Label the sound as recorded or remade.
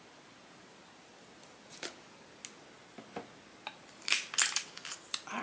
recorded